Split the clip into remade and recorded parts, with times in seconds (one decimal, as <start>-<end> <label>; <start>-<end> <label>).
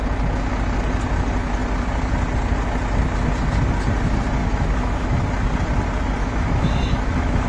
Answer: 0.0-4.4 recorded; 4.4-5.2 remade; 5.2-6.2 recorded; 6.2-7.5 remade